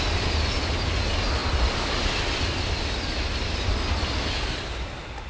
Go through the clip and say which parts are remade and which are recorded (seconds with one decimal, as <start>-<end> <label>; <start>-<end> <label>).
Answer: 0.0-5.3 recorded